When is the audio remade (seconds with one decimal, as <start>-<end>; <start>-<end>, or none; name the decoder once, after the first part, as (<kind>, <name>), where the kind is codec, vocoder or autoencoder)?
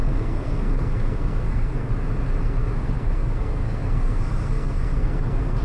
0.0-1.9 (codec, SNAC); 2.4-5.6